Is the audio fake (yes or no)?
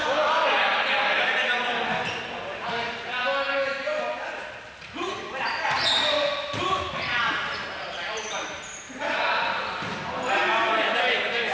no